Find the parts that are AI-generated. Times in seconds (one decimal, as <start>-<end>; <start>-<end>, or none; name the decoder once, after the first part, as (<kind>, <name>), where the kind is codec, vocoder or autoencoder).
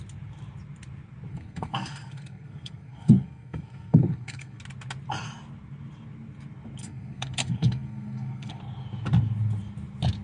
1.3-4.6 (codec, SNAC); 6.8-8.6